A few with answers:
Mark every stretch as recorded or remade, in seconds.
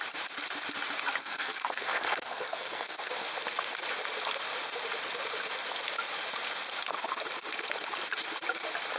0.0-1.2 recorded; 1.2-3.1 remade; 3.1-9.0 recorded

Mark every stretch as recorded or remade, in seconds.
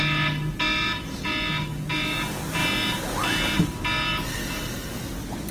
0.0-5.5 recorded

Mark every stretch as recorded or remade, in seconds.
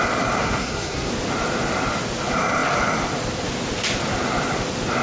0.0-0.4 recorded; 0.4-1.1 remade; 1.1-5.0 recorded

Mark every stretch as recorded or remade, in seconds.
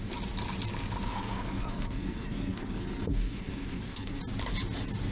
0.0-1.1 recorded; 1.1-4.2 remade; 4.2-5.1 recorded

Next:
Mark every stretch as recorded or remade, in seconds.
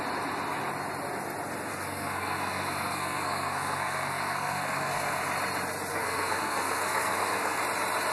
0.0-1.7 recorded; 1.7-5.2 remade; 5.2-5.9 recorded; 5.9-7.6 remade; 7.6-8.1 recorded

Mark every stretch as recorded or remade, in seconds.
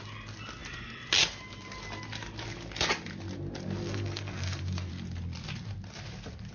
0.0-3.8 recorded; 3.8-4.9 remade; 4.9-6.5 recorded